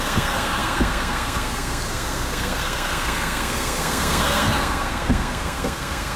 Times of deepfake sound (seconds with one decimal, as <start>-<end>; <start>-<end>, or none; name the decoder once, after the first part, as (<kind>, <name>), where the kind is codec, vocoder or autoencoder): 0.0-6.2 (codec, SNAC)